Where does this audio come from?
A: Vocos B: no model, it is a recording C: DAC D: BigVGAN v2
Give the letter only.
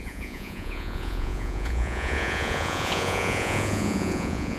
A